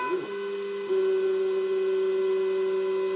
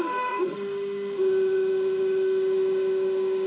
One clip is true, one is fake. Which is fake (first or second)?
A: second